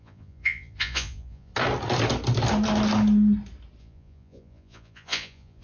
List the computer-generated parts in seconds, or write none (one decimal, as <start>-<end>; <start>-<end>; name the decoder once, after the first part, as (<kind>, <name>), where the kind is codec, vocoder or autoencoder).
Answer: 0.0-1.5 (vocoder, Vocos); 3.8-5.6